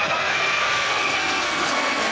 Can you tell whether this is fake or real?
fake